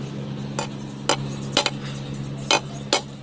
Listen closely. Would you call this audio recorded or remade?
recorded